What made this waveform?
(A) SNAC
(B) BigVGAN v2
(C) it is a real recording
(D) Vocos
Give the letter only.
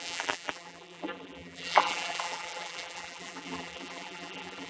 B